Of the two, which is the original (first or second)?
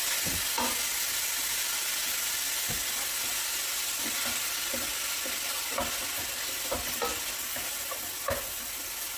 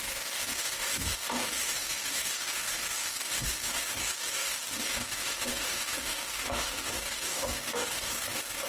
first